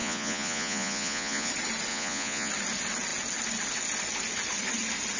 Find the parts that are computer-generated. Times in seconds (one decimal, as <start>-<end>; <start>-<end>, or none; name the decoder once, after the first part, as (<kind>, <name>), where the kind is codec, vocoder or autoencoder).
0.0-1.5 (vocoder, Vocos); 1.9-2.5